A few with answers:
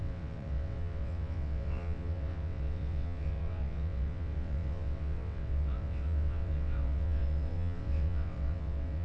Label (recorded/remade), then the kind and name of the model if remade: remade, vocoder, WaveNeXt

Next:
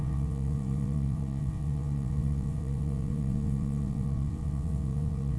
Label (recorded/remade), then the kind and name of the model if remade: remade, vocoder, WaveNeXt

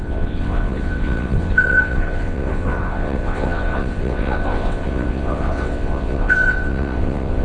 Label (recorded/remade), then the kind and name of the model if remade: remade, vocoder, WaveNeXt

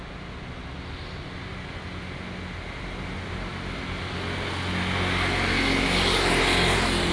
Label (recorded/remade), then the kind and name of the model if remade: recorded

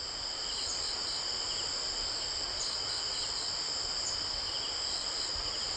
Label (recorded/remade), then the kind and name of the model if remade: recorded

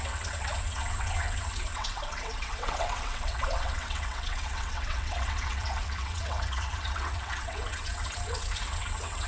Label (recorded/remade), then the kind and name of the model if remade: remade, vocoder, WaveNeXt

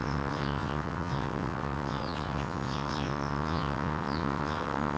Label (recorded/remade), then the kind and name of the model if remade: remade, vocoder, WaveNeXt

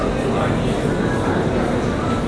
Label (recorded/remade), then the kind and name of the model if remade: recorded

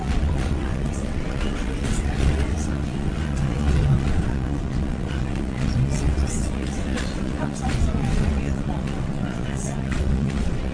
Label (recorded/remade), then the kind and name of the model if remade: remade, vocoder, WaveNeXt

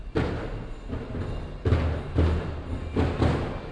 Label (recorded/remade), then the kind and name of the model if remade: recorded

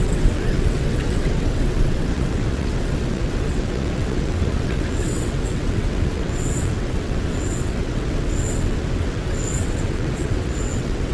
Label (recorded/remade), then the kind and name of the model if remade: remade, vocoder, WaveNeXt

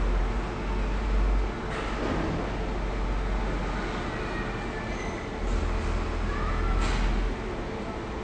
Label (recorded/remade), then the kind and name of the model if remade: recorded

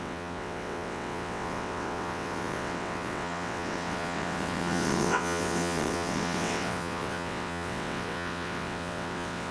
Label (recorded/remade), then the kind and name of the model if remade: remade, vocoder, WaveNeXt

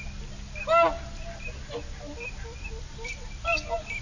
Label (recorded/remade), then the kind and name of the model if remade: recorded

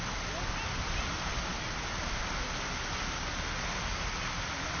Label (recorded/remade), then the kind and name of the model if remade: recorded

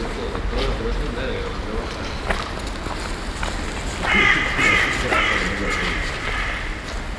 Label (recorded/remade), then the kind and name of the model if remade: recorded